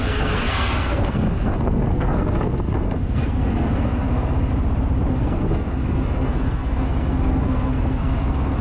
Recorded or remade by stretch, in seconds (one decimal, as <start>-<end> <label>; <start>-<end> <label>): 0.0-4.5 remade; 4.5-5.1 recorded; 5.1-8.6 remade

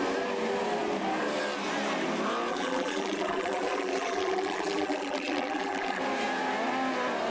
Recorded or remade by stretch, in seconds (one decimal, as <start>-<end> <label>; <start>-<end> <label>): 0.0-2.5 recorded; 2.5-6.0 remade; 6.0-7.3 recorded

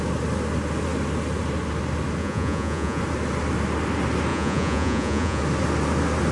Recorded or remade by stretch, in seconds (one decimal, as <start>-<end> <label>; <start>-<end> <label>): 0.0-2.2 recorded; 2.2-3.0 remade; 3.0-4.3 recorded; 4.3-5.4 remade; 5.4-6.3 recorded

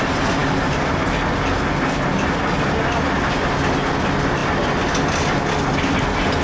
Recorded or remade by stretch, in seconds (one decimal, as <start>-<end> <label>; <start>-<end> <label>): 0.0-6.4 recorded

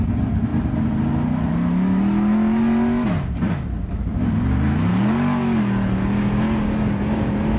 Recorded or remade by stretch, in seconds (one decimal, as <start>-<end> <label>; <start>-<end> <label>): 0.0-4.9 recorded; 4.9-5.6 remade; 5.6-7.6 recorded